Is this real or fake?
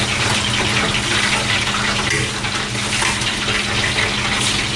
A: real